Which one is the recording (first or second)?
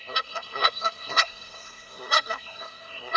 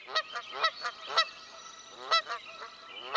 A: second